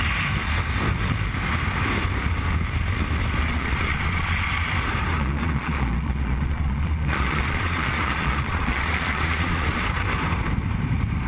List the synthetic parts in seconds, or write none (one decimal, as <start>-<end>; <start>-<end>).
3.4-4.5; 5.1-9.8